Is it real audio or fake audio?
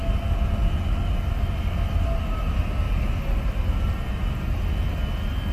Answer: real